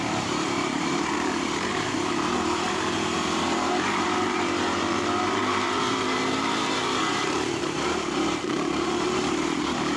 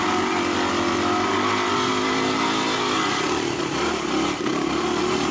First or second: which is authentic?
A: second